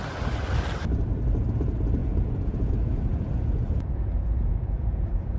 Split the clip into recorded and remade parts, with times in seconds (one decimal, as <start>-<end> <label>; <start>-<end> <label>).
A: 0.0-2.0 recorded; 2.0-5.4 remade